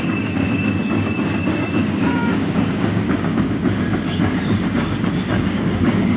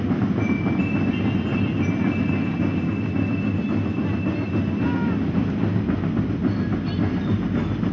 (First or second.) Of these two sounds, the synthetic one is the first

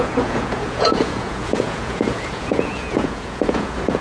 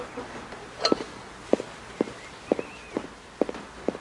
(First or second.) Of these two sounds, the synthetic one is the first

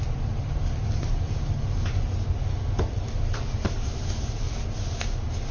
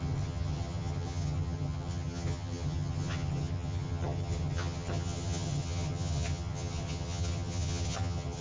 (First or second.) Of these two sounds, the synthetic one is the second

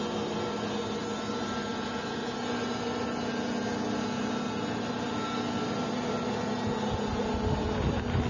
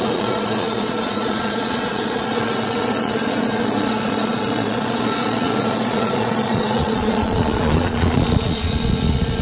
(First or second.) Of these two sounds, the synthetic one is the second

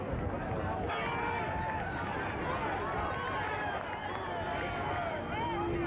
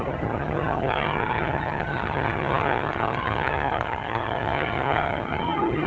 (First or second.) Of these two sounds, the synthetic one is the second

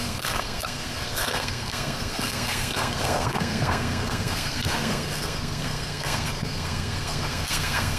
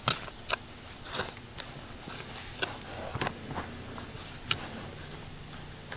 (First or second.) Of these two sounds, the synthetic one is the first